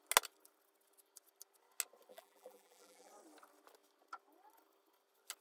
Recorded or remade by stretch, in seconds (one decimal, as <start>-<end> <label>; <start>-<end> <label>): 0.0-2.1 recorded; 2.1-3.1 remade; 3.1-5.4 recorded